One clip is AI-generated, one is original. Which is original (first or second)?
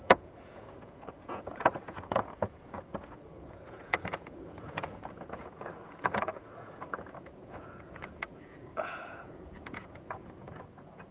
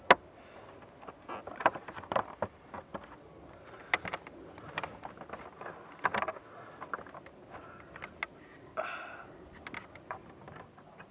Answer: second